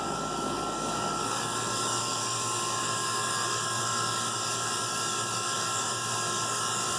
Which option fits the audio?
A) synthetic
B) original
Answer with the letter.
A